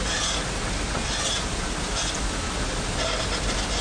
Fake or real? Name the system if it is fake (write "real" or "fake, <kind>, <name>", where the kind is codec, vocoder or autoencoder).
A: real